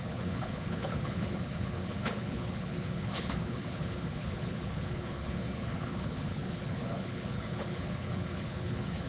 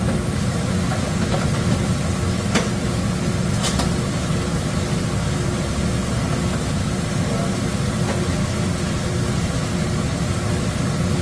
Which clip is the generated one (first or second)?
first